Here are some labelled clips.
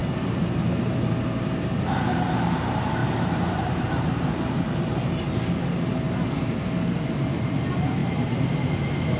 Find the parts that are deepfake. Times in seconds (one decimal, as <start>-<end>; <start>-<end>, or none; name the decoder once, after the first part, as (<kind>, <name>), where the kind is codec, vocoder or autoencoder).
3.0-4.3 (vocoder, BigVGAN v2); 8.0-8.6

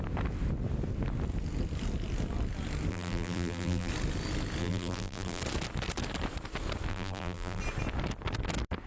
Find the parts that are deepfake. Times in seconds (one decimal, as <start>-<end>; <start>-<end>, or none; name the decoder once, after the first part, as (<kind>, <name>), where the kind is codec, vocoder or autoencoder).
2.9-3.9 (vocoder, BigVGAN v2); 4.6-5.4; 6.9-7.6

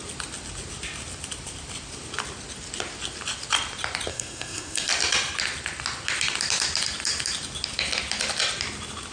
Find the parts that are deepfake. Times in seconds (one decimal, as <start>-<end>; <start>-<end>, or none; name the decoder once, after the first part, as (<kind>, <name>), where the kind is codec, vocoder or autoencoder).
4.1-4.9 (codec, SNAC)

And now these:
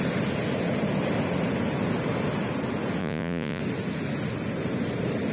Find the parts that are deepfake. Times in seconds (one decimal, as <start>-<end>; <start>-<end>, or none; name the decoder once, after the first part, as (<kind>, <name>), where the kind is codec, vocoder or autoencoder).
3.0-3.6 (vocoder, Vocos)

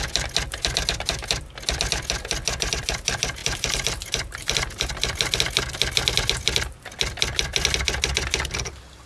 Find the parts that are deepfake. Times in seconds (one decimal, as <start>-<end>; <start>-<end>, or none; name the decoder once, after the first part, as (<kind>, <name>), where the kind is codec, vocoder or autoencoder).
3.4-5.4 (vocoder, BigVGAN v2)

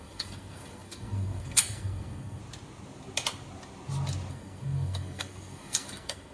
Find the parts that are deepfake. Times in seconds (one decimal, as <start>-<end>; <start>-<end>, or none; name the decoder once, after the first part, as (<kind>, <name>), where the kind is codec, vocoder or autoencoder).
0.0-2.4 (codec, SNAC); 4.3-6.3

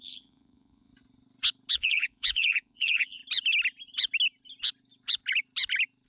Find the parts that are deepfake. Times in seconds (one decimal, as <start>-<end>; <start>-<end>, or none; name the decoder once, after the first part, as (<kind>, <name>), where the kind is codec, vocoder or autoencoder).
0.0-0.9 (vocoder, Vocos); 1.7-3.2

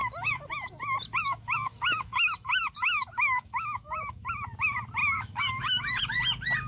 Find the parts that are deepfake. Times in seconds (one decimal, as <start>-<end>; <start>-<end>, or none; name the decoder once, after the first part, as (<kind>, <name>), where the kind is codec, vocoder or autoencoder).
0.0-0.7 (autoencoder, DAC-VAE); 1.2-4.3; 5.0-6.0